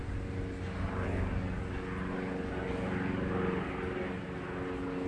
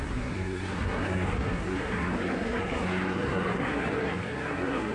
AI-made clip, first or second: second